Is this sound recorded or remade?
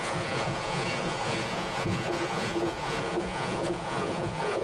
remade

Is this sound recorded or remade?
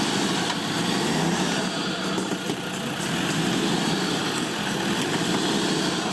recorded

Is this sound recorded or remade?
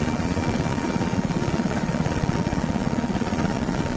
remade